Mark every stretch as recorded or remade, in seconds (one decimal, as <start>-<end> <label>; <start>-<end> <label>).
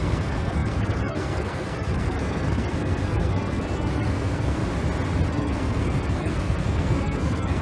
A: 0.0-4.6 remade; 4.6-5.3 recorded; 5.3-7.6 remade